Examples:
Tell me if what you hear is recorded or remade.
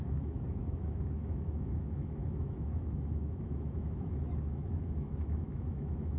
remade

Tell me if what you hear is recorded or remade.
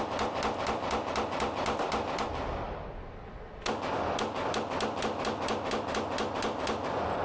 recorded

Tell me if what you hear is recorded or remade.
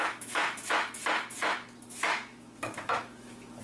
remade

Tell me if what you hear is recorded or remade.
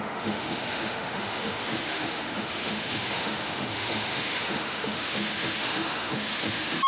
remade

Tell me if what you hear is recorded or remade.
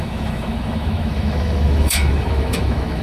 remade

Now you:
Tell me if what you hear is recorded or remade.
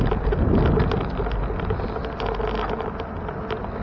recorded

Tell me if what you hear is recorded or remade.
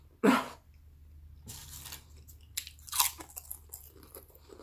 recorded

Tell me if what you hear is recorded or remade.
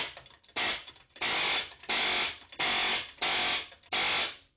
recorded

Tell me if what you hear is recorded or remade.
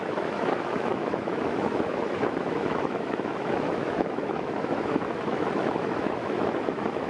remade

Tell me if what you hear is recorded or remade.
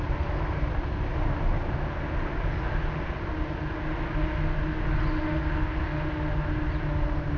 recorded